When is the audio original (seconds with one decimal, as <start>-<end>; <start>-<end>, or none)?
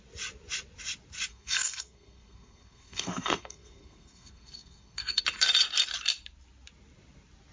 0.0-1.3; 5.2-7.5